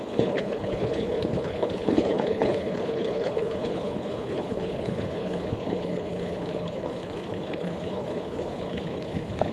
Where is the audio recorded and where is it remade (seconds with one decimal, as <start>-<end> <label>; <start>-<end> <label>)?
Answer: 0.0-9.5 remade